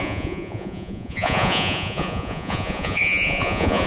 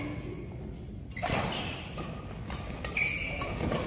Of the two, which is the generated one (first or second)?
first